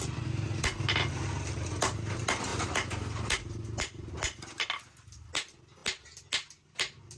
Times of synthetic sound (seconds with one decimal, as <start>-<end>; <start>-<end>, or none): none